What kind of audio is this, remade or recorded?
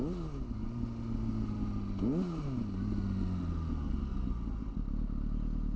recorded